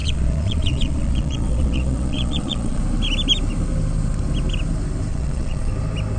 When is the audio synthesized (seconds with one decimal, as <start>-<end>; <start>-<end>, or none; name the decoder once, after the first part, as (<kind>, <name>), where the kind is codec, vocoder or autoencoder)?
0.0-2.8 (vocoder, Vocos); 5.1-5.7